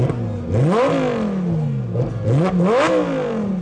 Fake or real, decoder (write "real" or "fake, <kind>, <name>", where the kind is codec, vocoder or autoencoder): real